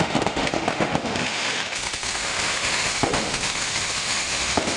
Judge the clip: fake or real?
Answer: fake